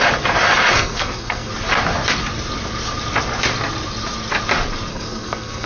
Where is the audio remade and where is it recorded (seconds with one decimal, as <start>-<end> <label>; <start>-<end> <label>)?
0.0-0.7 recorded; 0.7-1.5 remade; 1.5-4.9 recorded; 4.9-5.7 remade